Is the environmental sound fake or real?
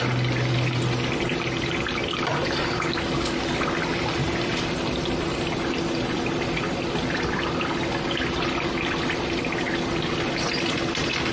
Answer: fake